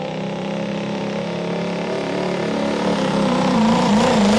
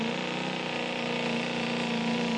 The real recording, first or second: second